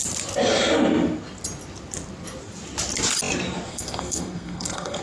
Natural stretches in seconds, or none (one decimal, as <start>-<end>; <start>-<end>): 0.0-3.7